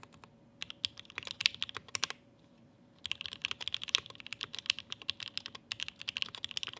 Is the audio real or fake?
real